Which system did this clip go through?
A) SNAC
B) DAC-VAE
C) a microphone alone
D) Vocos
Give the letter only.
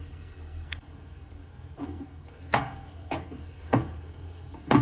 A